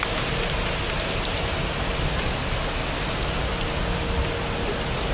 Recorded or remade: recorded